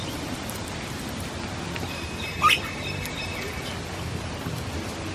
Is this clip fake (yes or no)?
no